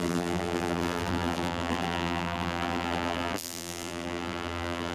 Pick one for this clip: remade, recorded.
remade